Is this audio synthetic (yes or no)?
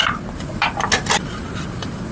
no